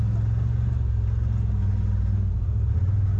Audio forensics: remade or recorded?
recorded